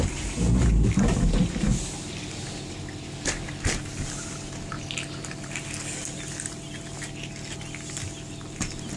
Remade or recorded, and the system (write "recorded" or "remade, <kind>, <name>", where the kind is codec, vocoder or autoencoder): recorded